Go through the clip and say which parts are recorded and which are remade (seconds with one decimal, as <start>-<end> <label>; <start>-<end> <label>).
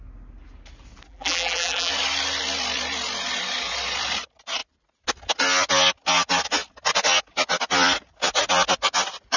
0.0-1.1 recorded; 1.1-1.9 remade; 1.9-9.4 recorded